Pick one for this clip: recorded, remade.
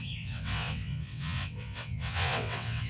remade